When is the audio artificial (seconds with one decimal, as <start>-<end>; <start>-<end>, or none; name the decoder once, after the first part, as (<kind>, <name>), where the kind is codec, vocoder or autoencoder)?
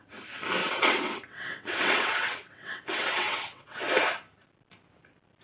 0.6-3.8 (vocoder, WaveNeXt)